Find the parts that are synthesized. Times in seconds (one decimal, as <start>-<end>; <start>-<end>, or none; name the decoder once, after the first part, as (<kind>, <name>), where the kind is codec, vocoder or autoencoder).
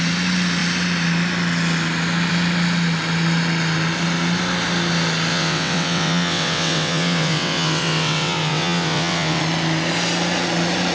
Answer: 5.3-9.4 (vocoder, WaveNeXt)